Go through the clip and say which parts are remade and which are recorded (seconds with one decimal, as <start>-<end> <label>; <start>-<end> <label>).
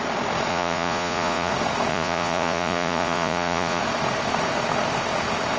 0.0-0.5 recorded; 0.5-1.5 remade; 1.5-1.9 recorded; 1.9-3.8 remade; 3.8-5.6 recorded